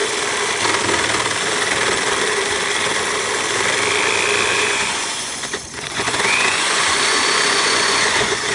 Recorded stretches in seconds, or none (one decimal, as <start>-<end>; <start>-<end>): 0.0-4.5